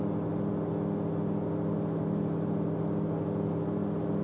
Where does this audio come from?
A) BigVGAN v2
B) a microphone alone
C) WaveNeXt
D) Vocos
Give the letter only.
B